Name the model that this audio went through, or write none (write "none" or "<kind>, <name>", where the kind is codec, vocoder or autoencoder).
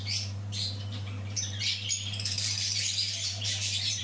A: vocoder, BigVGAN v2